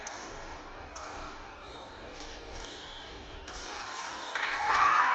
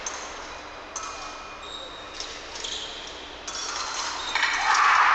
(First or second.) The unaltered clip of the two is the second